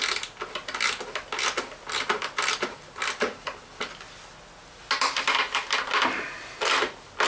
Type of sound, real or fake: real